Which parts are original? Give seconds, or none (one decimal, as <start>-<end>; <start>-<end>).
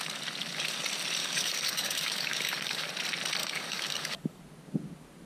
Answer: 0.0-1.2; 2.9-3.4; 4.4-5.3